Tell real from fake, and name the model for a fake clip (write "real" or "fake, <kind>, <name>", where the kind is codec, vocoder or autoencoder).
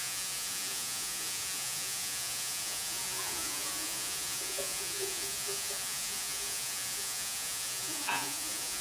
fake, vocoder, Vocos